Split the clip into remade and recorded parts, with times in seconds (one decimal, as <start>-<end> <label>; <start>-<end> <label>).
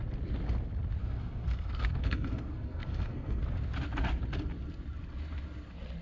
0.0-1.0 recorded; 1.0-3.4 remade; 3.4-6.0 recorded